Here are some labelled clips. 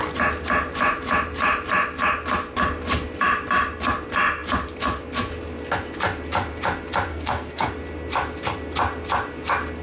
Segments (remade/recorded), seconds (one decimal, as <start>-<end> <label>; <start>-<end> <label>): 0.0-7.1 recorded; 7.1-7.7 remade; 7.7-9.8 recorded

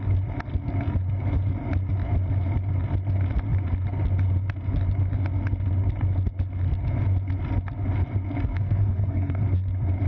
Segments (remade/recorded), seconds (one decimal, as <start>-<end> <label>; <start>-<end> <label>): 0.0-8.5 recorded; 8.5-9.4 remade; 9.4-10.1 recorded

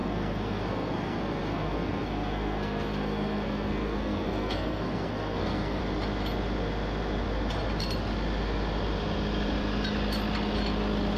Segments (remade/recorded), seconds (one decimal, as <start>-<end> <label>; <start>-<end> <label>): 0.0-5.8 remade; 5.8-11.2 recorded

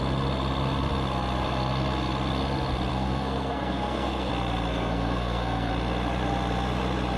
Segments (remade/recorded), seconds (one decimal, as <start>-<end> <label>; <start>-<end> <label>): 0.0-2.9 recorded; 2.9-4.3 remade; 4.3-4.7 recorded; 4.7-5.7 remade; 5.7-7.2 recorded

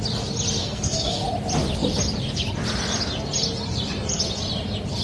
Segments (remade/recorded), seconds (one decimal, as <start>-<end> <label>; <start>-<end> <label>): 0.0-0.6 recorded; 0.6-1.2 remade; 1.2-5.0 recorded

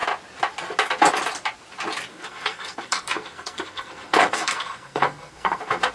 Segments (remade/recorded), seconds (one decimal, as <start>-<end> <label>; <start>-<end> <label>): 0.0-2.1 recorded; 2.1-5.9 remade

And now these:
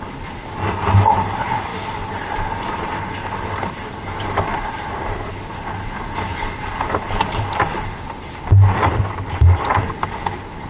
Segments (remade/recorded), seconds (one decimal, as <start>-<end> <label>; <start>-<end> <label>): 0.0-10.7 recorded